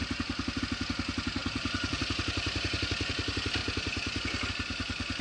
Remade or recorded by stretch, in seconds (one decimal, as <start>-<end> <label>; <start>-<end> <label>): 0.0-0.6 remade; 0.6-5.2 recorded